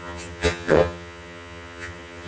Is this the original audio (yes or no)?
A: no